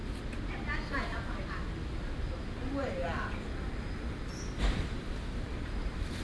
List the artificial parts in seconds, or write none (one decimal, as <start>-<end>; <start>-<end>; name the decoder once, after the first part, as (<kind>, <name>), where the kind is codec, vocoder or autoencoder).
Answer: 2.3-3.0 (vocoder, BigVGAN v2); 4.6-6.2